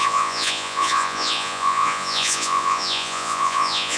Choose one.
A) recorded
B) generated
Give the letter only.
B